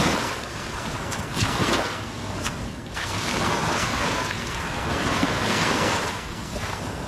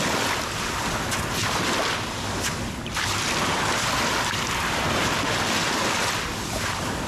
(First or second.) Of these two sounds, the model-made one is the first